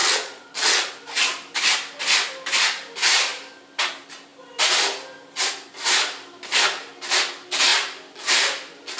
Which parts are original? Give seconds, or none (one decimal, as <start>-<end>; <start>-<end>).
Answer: 0.9-9.0